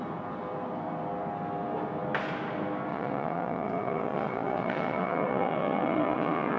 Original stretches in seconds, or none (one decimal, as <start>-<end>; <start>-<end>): 0.0-2.9